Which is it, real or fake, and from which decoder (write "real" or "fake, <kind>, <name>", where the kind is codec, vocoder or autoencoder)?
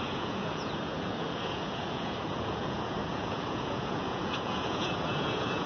fake, vocoder, Vocos